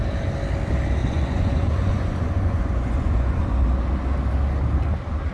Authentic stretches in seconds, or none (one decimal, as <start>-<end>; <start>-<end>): 0.0-1.0; 3.5-5.3

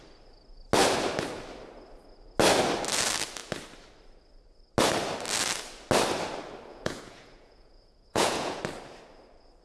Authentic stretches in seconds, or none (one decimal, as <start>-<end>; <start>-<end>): 0.0-6.7; 8.6-9.6

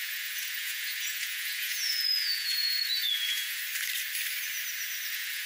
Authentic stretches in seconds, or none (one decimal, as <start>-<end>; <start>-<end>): 3.6-5.1

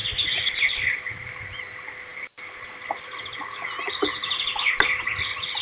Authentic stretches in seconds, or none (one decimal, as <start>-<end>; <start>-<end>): 0.0-5.6